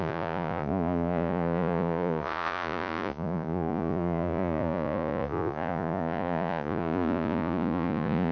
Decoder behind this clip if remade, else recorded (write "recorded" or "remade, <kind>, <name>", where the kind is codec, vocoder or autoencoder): remade, vocoder, Vocos